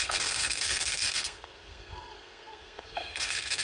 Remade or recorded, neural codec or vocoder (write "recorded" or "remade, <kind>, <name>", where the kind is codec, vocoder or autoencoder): remade, codec, SNAC